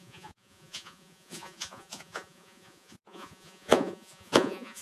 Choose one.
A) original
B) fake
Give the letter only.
B